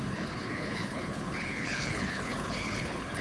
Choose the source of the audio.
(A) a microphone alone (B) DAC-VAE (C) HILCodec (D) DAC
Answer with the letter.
C